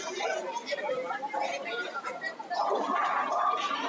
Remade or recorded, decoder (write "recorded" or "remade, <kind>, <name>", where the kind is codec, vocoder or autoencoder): recorded